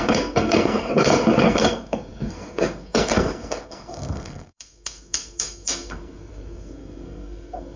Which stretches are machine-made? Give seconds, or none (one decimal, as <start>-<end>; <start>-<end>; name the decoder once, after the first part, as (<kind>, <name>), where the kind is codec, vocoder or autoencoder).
0.0-7.8 (codec, SNAC)